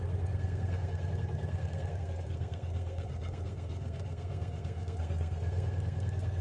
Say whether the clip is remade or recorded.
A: remade